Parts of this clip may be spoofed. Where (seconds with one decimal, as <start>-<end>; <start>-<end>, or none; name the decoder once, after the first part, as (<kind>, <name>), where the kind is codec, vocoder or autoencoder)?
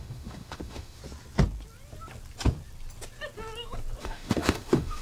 0.0-1.0 (autoencoder, DAC-VAE); 4.0-5.0